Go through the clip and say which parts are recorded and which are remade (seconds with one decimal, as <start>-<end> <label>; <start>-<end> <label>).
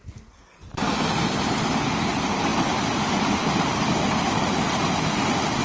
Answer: 0.0-5.6 recorded